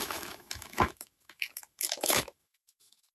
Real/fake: fake